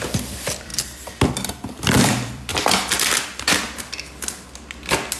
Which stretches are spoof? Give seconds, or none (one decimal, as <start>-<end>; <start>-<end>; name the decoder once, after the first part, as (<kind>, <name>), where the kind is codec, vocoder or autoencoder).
0.0-0.7 (vocoder, BigVGAN v2); 1.3-2.5